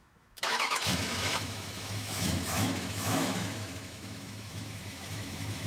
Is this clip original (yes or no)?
no